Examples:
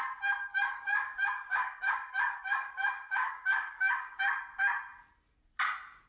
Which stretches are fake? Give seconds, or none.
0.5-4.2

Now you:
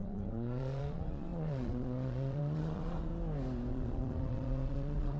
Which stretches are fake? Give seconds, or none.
0.0-3.1; 3.7-5.2

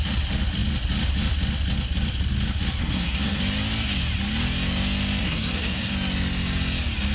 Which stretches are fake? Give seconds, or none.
2.8-3.4; 5.2-5.9